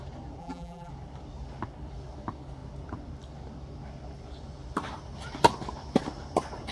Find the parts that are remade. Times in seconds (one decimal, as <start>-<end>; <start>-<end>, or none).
0.4-0.9